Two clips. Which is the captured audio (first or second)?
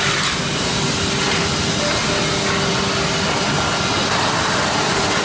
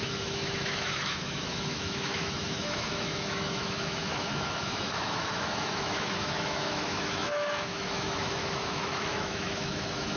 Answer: first